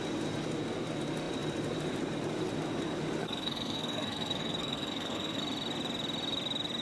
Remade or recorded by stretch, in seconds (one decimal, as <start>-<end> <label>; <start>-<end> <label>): 0.0-3.2 recorded; 3.2-5.4 remade; 5.4-6.8 recorded